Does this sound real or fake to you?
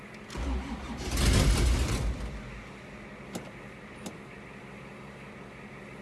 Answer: real